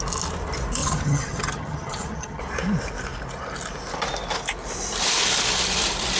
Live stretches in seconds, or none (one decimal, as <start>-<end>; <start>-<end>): 0.0-0.8; 2.4-6.2